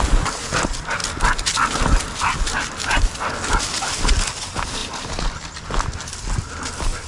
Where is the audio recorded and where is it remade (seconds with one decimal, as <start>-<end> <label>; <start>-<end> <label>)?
0.0-7.1 recorded